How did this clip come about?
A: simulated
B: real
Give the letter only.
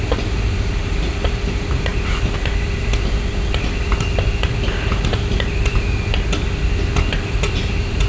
B